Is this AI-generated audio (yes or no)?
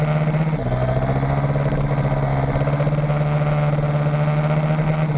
no